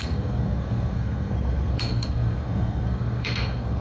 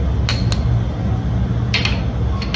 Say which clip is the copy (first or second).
first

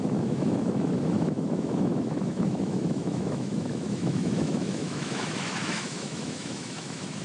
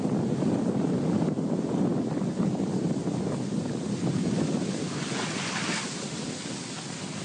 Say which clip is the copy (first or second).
first